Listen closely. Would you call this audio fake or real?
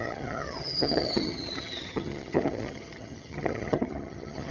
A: fake